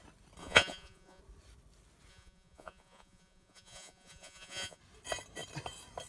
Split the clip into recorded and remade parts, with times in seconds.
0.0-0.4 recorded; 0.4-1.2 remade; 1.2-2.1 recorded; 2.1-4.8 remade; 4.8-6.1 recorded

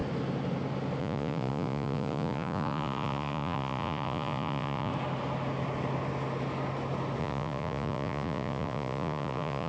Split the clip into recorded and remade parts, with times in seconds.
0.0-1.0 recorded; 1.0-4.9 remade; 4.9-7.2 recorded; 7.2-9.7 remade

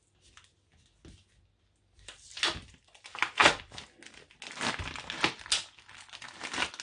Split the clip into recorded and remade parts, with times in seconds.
0.0-6.8 recorded

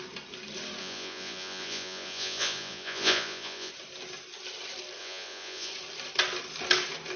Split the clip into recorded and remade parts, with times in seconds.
0.0-0.8 recorded; 0.8-3.7 remade; 3.7-5.0 recorded; 5.0-5.7 remade; 5.7-7.2 recorded